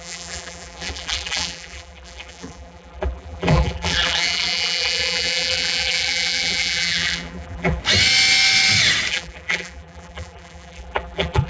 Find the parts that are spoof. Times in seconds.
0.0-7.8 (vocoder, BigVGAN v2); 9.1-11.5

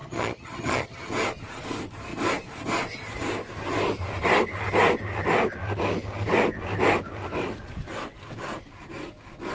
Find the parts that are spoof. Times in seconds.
0.0-1.1 (vocoder, HiFi-GAN)